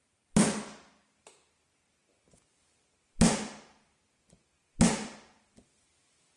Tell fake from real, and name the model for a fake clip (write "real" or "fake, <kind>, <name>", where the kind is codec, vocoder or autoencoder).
real